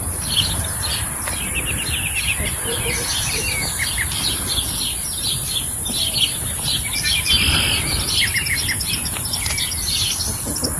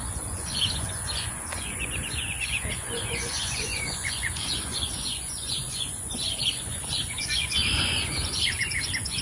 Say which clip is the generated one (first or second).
second